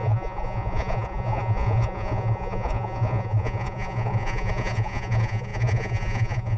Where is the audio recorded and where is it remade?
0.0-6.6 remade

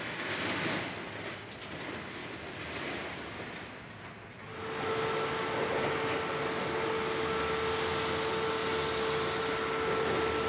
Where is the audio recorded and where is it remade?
0.0-10.5 recorded